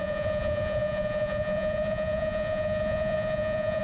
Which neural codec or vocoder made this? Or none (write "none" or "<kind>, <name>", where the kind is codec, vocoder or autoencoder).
vocoder, Vocos